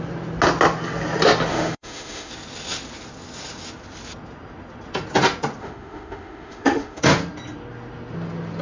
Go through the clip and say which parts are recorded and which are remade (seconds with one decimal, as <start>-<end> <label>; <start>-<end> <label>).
0.0-1.5 recorded; 1.5-2.3 remade; 2.3-5.6 recorded; 5.6-7.0 remade; 7.0-8.6 recorded